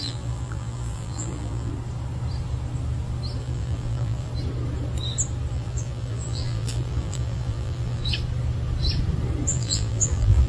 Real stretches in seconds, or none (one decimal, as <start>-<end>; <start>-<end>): 1.7-3.4; 4.3-5.5; 8.0-9.5